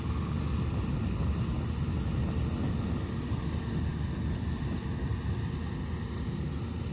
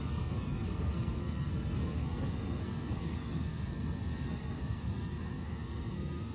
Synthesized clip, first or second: second